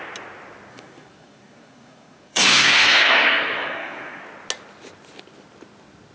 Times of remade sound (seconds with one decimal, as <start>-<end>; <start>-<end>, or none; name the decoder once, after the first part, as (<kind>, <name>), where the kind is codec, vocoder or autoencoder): 0.7-4.2 (codec, SNAC)